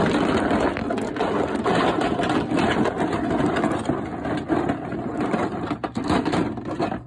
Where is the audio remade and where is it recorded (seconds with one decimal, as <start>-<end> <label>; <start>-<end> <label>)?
0.0-0.8 remade; 0.8-5.1 recorded; 5.1-7.1 remade